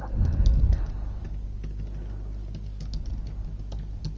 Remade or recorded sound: recorded